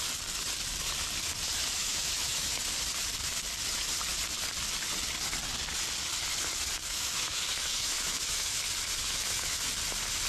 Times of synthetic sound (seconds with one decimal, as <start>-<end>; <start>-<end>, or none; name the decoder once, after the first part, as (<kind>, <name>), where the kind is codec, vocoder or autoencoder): 1.8-2.6 (autoencoder, DAC-VAE); 6.9-8.6; 9.0-9.7